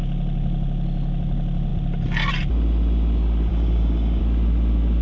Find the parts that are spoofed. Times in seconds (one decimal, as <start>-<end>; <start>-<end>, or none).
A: 3.5-4.2